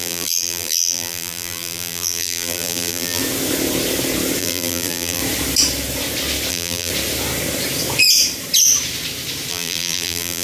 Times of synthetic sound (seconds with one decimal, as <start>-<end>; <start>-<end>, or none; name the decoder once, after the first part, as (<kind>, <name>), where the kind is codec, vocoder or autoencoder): 0.0-3.2 (vocoder, BigVGAN v2); 4.4-5.2; 6.5-6.9; 9.5-10.4

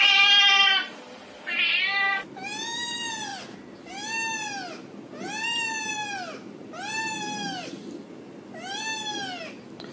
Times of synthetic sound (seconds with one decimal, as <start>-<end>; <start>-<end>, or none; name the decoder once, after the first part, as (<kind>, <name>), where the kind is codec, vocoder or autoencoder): 3.3-3.9 (vocoder, BigVGAN v2)

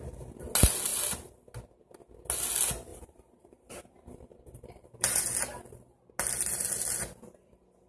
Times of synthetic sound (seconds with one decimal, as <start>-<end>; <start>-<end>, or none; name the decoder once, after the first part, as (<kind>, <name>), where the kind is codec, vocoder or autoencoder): 2.9-5.2 (vocoder, BigVGAN v2)

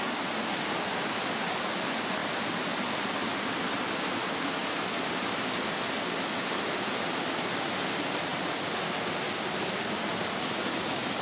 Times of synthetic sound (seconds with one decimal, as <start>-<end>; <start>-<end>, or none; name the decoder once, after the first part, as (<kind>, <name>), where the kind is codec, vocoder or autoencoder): 2.2-3.5 (vocoder, BigVGAN v2); 4.6-5.8; 8.3-8.9

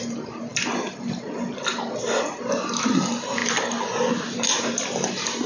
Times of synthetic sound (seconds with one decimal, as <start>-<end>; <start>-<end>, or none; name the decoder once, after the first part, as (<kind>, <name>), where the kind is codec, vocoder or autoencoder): 0.5-2.5 (vocoder, BigVGAN v2)